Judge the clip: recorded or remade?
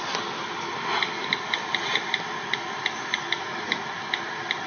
recorded